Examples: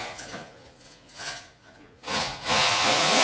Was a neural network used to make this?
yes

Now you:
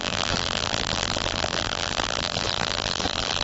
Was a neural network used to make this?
yes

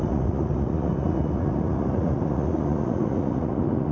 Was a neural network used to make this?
yes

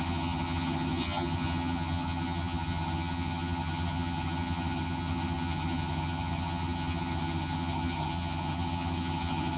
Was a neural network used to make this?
yes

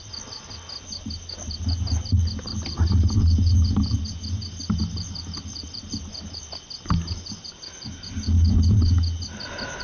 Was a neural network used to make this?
no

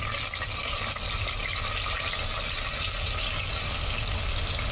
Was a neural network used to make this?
no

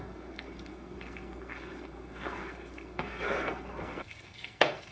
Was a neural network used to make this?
yes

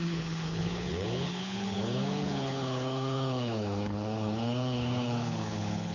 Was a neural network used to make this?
yes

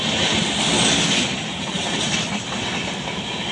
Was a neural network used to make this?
no